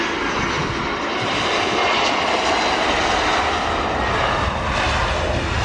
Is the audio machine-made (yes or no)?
no